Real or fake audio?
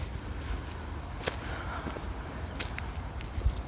real